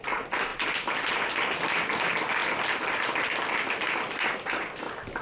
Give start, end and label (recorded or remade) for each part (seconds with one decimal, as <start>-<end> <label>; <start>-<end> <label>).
0.0-5.2 recorded